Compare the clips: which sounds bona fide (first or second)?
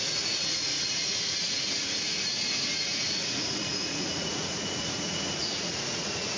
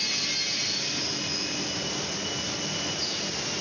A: second